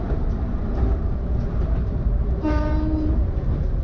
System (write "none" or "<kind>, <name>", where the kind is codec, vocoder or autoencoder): vocoder, BigVGAN v2